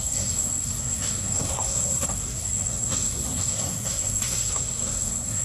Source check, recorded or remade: remade